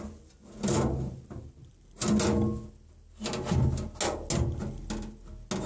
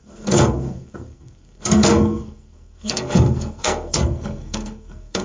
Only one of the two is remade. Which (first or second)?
second